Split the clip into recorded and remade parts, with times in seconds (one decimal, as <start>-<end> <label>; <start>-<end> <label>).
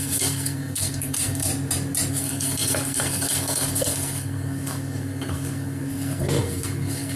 0.0-1.5 remade; 1.5-2.1 recorded; 2.1-7.2 remade